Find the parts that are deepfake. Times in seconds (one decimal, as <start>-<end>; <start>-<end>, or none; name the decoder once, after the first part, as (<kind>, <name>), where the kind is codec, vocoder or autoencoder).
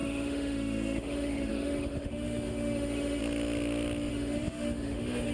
0.0-3.2 (autoencoder, DAC-VAE); 4.1-5.3